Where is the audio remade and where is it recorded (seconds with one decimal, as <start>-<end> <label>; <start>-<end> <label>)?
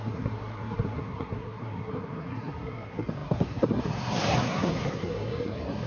0.0-5.9 remade